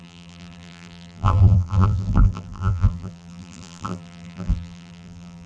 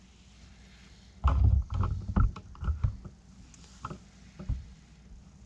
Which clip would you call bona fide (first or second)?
second